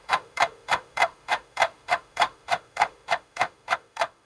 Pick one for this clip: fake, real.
fake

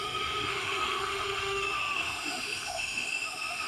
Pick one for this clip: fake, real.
fake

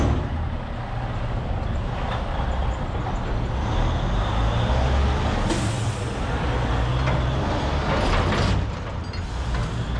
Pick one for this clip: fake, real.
real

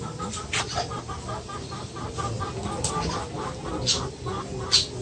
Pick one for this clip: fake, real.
real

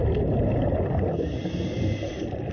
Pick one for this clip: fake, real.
real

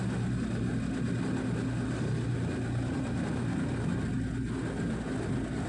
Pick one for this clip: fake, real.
real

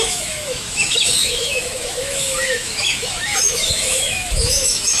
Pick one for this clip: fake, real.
fake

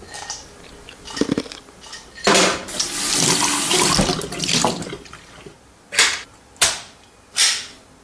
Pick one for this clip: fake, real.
real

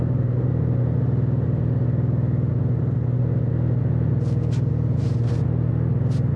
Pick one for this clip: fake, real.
real